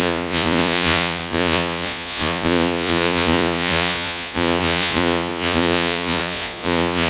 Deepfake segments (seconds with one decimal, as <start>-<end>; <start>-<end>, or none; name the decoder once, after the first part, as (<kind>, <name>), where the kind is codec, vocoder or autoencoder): 0.0-7.1 (vocoder, Vocos)